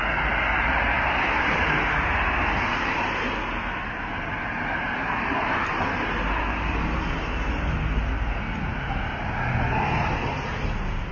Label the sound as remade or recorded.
recorded